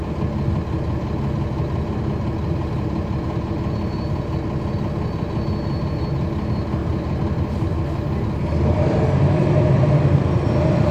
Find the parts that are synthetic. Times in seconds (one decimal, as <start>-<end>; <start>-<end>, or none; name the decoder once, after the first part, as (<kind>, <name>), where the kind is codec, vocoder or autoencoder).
none